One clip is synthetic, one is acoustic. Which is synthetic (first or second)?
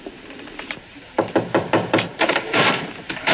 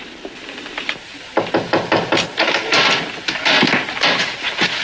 first